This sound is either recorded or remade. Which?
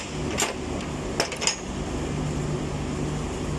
recorded